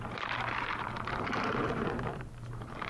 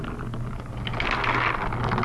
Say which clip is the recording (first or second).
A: second